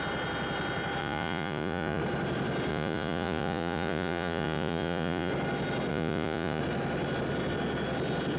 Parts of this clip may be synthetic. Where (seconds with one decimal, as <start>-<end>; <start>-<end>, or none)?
1.0-2.0; 2.7-5.3; 5.9-6.6